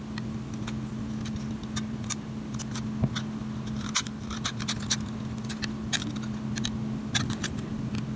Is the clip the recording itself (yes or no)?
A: yes